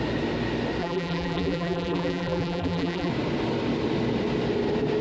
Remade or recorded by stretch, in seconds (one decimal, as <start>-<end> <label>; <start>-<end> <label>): 0.0-0.8 recorded; 0.8-3.1 remade; 3.1-5.0 recorded

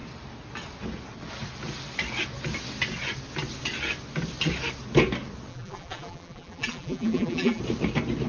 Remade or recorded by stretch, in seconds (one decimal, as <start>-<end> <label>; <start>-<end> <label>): 0.0-5.5 recorded; 5.5-7.6 remade; 7.6-8.3 recorded

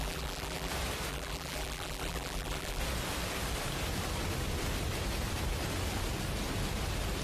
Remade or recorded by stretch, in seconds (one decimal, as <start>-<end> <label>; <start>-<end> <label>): 0.0-0.7 remade; 0.7-1.1 recorded; 1.1-2.8 remade; 2.8-7.2 recorded

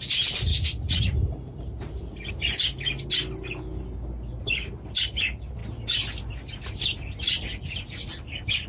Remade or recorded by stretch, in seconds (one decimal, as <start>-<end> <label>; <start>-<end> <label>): 0.0-0.5 recorded; 0.5-2.3 remade; 2.3-8.7 recorded

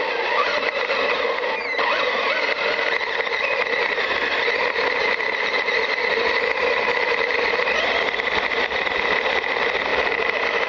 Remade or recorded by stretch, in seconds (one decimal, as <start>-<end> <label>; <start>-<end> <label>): 0.0-9.9 recorded; 9.9-10.7 remade

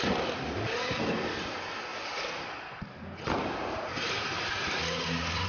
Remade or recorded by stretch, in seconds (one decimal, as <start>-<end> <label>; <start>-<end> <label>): 0.0-5.5 recorded